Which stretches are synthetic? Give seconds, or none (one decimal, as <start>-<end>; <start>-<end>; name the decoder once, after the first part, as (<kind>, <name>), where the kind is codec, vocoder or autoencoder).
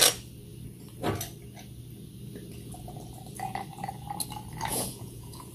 4.7-5.5 (vocoder, Vocos)